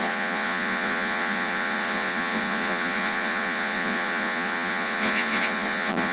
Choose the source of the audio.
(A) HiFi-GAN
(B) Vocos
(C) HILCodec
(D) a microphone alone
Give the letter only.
B